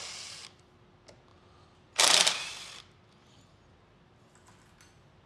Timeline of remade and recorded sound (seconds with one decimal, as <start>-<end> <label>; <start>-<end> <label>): 0.0-1.3 recorded; 1.3-2.5 remade; 2.5-5.3 recorded